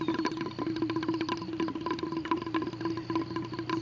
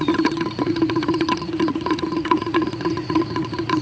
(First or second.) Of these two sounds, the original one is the first